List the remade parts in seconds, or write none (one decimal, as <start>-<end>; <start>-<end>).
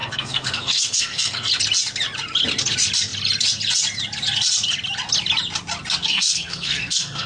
0.0-1.5; 6.0-7.3